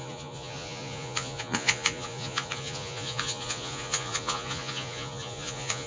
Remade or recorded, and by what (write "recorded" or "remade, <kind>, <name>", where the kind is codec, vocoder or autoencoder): remade, vocoder, Vocos